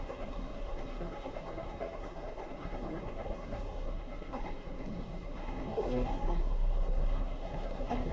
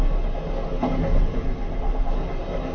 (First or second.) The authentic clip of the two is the second